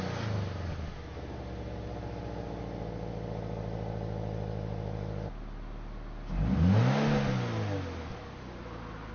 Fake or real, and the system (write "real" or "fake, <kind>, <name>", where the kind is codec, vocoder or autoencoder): real